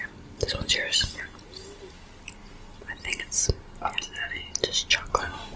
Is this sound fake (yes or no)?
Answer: no